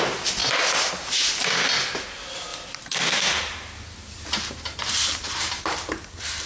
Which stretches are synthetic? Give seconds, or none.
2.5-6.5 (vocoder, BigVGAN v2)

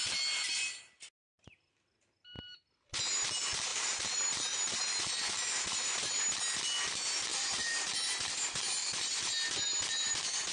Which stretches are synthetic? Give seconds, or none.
3.7-6.4 (vocoder, BigVGAN v2); 7.3-8.2; 8.8-9.3